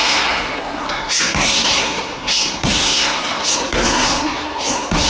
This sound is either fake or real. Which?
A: fake